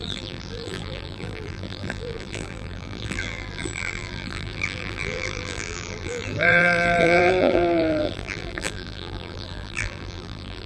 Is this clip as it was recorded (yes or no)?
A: no